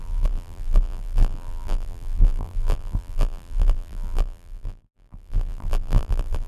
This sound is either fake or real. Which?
fake